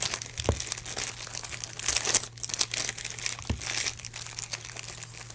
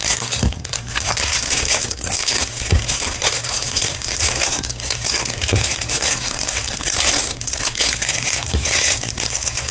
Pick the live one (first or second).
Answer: first